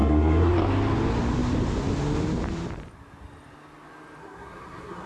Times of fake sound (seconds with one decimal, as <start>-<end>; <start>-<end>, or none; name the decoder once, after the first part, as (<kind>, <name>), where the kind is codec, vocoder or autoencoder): 0.0-0.5 (codec, SNAC); 4.2-5.1